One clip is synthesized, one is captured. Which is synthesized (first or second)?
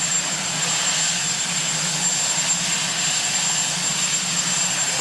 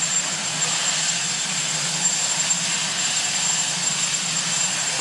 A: second